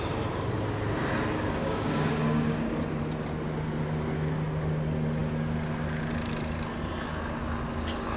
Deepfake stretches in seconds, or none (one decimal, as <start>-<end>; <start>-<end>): 1.6-3.0